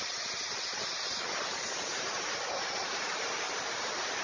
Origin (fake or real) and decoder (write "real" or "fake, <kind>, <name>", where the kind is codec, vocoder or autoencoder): real